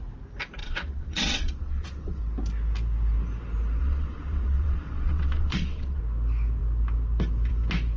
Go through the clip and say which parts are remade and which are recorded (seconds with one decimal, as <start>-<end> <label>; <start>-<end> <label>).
0.0-0.6 recorded; 0.6-2.2 remade; 2.2-3.8 recorded; 3.8-6.0 remade; 6.0-8.0 recorded